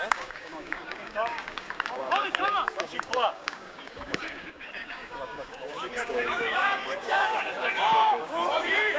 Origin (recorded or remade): remade